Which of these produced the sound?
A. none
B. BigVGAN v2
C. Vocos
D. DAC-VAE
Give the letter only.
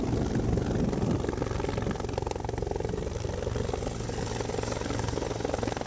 A